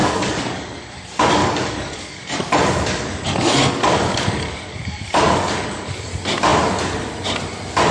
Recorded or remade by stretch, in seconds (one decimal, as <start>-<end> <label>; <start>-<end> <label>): 0.0-0.9 remade; 0.9-1.4 recorded; 1.4-6.1 remade; 6.1-7.9 recorded